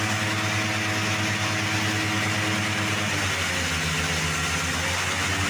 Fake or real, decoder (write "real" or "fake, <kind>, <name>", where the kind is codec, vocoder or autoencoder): real